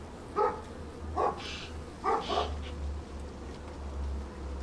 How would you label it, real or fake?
real